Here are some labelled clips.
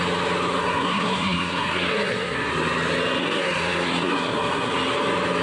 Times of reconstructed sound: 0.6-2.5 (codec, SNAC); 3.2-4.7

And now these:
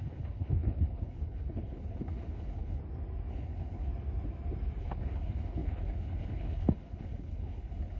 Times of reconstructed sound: 0.0-2.8 (codec, HILCodec); 3.3-3.9; 4.8-8.0

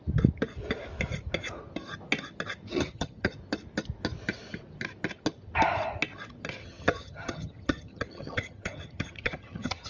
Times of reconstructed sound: 2.7-3.3 (vocoder, HiFi-GAN); 6.6-9.9

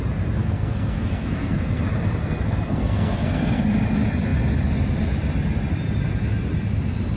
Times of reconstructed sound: 0.4-1.8 (codec, SNAC); 2.2-3.6

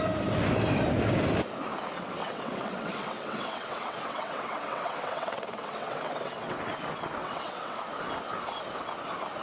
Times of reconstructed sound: 2.2-6.6 (vocoder, WaveNeXt); 7.2-7.8

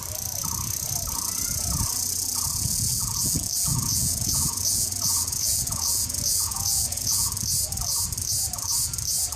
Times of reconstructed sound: 3.7-7.3 (vocoder, Vocos)

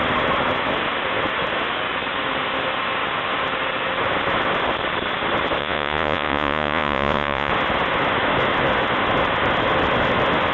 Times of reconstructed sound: 5.6-7.5 (vocoder, Vocos)

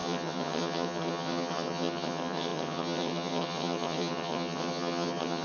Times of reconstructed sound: 0.0-5.4 (vocoder, HiFi-GAN)